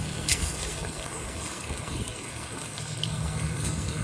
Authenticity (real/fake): fake